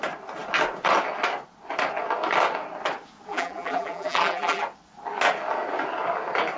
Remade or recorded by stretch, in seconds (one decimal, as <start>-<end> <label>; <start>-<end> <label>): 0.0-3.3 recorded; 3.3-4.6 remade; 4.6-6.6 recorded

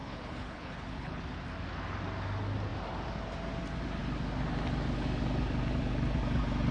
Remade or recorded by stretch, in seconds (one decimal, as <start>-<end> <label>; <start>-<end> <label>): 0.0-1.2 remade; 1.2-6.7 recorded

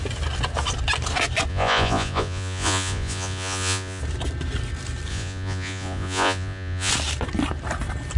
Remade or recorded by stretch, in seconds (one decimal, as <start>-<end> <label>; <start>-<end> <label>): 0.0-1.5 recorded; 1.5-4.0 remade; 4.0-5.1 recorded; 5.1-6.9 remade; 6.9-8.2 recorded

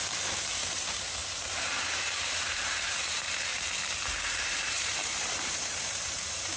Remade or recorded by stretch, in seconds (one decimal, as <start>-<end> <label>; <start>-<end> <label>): 0.0-3.5 remade; 3.5-4.4 recorded; 4.4-6.6 remade

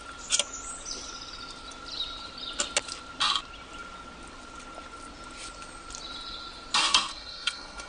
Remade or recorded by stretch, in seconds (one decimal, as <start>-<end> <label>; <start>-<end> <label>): 0.0-6.8 recorded; 6.8-7.9 remade

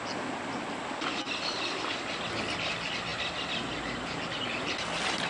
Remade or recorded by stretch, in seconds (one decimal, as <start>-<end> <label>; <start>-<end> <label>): 0.0-5.3 recorded

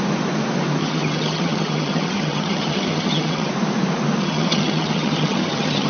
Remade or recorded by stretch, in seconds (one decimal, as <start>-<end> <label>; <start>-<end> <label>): 0.0-0.8 recorded; 0.8-3.5 remade; 3.5-4.2 recorded; 4.2-5.9 remade

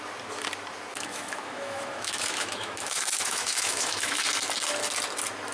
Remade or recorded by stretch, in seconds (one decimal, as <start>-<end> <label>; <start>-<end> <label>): 0.0-0.9 recorded; 0.9-4.2 remade; 4.2-5.5 recorded